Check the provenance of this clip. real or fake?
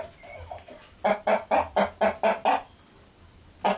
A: real